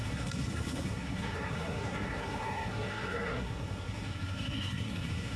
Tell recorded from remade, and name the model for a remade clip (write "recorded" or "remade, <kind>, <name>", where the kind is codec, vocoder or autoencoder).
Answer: remade, codec, SNAC